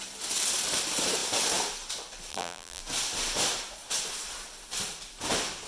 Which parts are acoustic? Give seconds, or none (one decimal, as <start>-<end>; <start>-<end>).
0.0-2.3; 2.8-5.7